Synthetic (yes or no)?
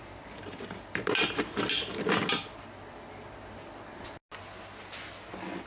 no